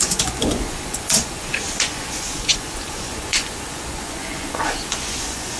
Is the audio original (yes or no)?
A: no